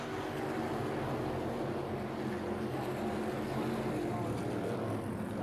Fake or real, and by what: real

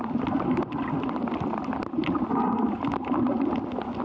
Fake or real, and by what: real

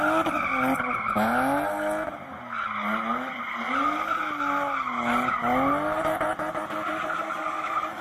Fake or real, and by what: real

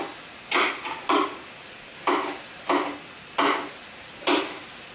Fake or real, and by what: real